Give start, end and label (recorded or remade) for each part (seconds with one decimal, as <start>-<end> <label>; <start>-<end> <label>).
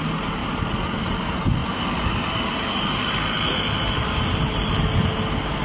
0.0-5.6 recorded